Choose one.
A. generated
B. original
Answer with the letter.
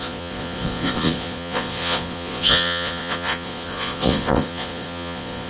A